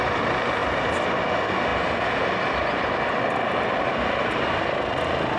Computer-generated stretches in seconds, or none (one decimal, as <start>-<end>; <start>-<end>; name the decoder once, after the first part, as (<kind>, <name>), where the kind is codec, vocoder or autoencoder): 0.6-1.2 (vocoder, BigVGAN v2)